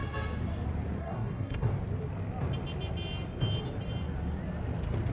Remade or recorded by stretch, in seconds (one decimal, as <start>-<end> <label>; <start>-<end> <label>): 0.0-1.0 recorded; 1.0-1.7 remade; 1.7-5.1 recorded